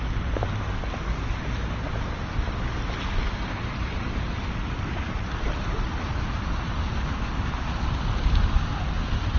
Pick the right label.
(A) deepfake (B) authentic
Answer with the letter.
B